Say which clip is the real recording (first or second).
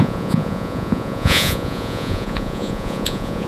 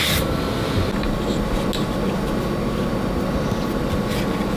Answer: second